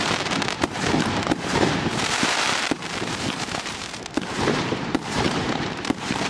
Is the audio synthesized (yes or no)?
yes